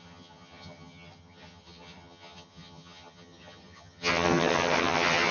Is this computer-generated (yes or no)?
yes